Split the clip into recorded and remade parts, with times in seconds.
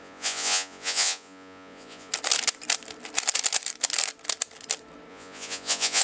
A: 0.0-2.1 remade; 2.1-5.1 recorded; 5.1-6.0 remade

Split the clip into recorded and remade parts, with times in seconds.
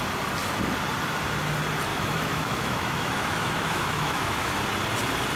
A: 0.0-1.9 recorded; 1.9-4.6 remade; 4.6-5.4 recorded